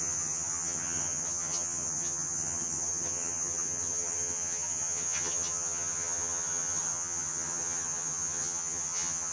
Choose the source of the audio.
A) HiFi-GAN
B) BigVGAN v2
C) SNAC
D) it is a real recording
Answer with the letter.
A